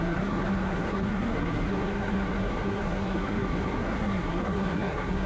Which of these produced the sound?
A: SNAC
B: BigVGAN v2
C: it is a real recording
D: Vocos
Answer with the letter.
A